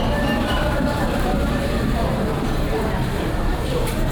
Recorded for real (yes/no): no